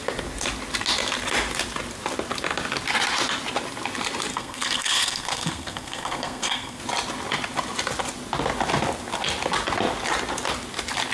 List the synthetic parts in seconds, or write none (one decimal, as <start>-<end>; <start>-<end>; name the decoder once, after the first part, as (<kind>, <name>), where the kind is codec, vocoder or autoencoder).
4.3-6.8 (codec, SNAC)